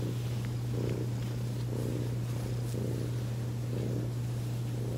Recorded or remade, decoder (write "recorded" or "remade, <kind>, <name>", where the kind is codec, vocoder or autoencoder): recorded